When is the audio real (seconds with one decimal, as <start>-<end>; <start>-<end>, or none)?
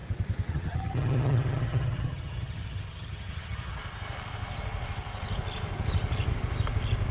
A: 0.0-0.5; 3.8-7.1